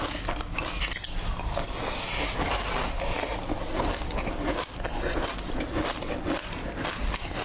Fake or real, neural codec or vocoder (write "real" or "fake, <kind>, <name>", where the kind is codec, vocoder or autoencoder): fake, vocoder, BigVGAN v2